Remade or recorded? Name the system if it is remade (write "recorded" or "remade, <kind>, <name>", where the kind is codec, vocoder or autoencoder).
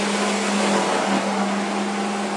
recorded